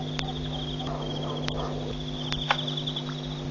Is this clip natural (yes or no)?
yes